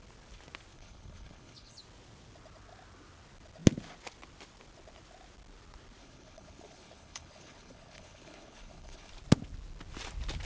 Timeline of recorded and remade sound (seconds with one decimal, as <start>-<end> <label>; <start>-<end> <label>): 0.0-0.7 recorded; 0.7-1.8 remade; 1.8-6.0 recorded; 6.0-9.1 remade; 9.1-10.5 recorded